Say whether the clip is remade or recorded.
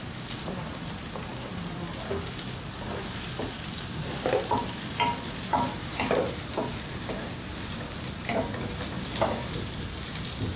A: recorded